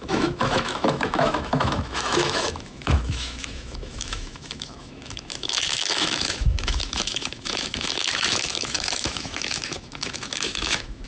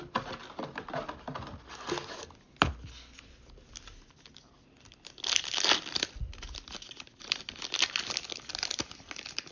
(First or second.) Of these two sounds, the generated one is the first